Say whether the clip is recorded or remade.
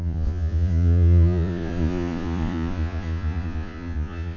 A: remade